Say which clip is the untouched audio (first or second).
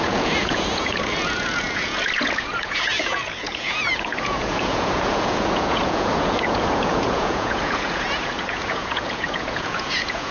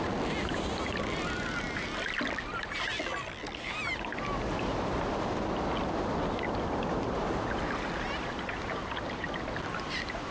second